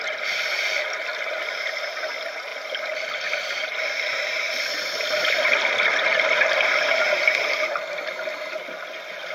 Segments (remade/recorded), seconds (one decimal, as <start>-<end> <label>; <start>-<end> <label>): 0.0-2.5 recorded; 2.5-6.6 remade; 6.6-9.3 recorded